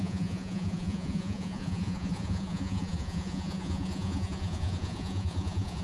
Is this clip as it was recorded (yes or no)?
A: no